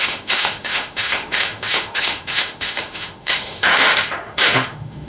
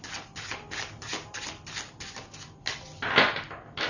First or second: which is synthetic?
first